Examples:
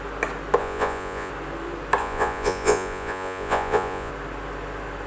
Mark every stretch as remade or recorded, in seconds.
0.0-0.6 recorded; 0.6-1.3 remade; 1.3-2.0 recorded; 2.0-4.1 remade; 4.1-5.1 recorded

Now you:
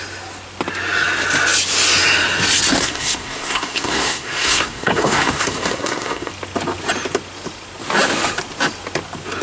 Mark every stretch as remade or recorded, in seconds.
0.0-2.8 recorded; 2.8-6.3 remade; 6.3-9.4 recorded

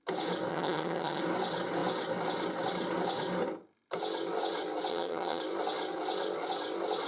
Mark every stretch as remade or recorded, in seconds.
0.0-0.5 recorded; 0.5-1.2 remade; 1.2-4.9 recorded; 4.9-5.4 remade; 5.4-7.1 recorded